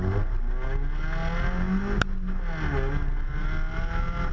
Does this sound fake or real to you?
real